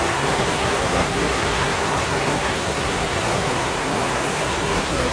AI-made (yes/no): yes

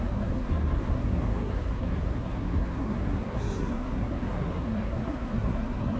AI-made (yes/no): yes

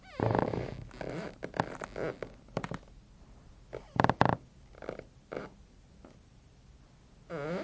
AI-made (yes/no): no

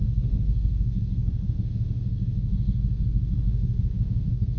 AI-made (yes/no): yes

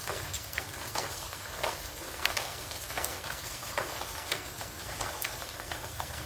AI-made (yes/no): yes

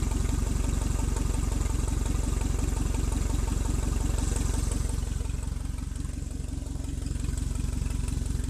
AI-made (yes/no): no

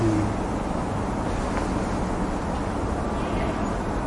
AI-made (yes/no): no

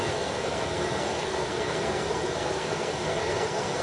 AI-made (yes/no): yes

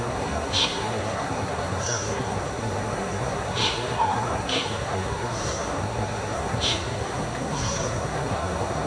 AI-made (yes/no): yes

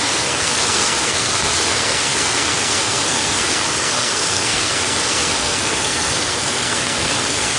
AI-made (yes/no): yes